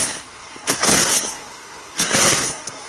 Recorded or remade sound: remade